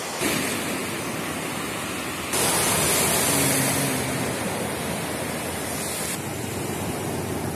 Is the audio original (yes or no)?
yes